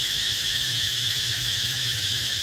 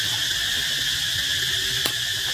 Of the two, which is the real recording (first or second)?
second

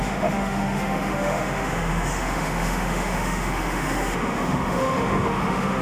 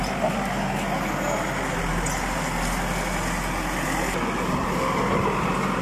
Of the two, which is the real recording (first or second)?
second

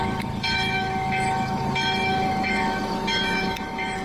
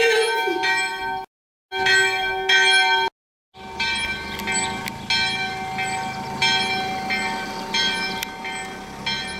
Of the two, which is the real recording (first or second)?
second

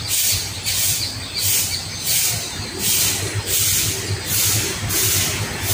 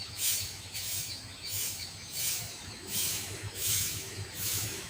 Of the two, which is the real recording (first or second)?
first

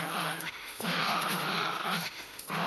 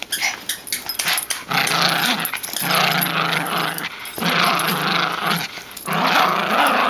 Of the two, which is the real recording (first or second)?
second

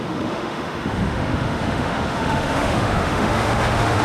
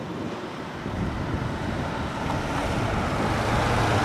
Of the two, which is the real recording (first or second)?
second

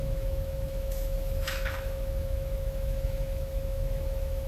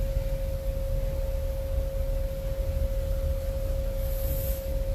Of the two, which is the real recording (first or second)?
second